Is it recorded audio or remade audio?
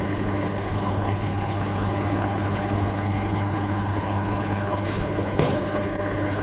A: remade